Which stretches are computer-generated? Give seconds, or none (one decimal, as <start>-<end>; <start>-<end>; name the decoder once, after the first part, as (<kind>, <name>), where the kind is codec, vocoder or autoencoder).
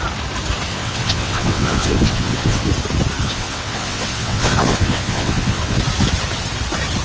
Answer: 0.7-2.6 (vocoder, WaveNeXt); 3.2-5.8